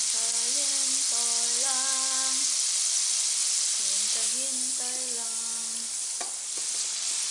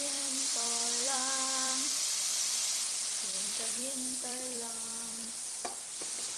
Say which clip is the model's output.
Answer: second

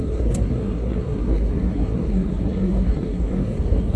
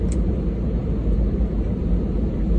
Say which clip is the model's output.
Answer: first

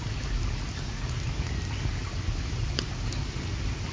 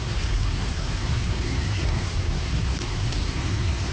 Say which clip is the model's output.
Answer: second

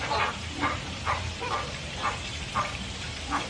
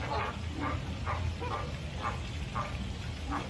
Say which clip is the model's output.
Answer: first